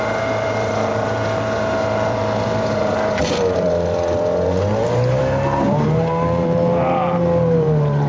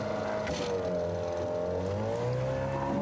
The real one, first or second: second